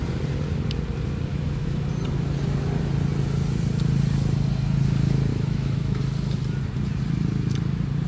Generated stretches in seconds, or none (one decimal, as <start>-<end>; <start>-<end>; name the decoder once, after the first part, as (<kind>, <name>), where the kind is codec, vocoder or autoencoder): 1.3-1.9 (autoencoder, DAC-VAE); 5.3-6.0